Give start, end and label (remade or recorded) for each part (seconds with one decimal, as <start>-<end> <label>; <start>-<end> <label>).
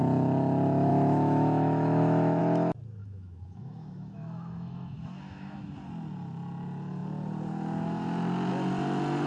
0.0-0.9 recorded; 0.9-2.4 remade; 2.4-3.0 recorded; 3.0-5.7 remade; 5.7-9.3 recorded